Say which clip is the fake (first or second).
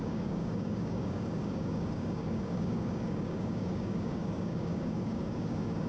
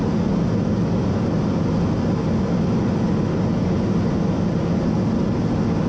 first